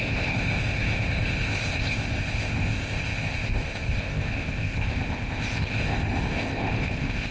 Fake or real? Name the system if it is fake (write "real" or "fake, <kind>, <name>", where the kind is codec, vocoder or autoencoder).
fake, codec, ZipCodec